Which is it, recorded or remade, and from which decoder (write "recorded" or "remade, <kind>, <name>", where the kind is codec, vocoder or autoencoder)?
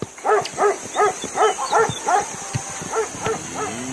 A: recorded